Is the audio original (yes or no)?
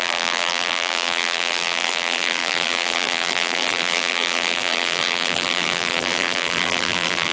no